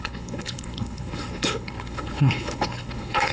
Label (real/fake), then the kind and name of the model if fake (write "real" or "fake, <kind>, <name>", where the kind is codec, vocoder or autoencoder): fake, codec, HILCodec